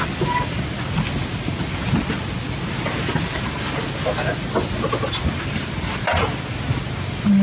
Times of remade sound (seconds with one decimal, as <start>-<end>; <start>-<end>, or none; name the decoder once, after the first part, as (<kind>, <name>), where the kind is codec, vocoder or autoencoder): none